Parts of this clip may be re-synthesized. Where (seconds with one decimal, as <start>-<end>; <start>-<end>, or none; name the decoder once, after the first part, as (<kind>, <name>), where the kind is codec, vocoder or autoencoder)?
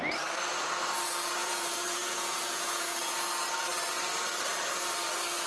1.4-3.2 (vocoder, Vocos)